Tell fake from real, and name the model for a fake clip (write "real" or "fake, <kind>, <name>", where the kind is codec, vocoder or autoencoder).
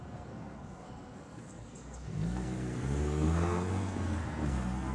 fake, codec, SNAC